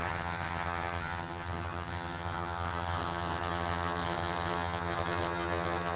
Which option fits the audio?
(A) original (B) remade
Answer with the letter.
B